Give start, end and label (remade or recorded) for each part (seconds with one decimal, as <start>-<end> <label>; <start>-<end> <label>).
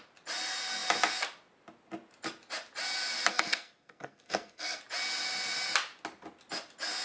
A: 0.0-3.3 recorded; 3.3-4.8 remade; 4.8-7.0 recorded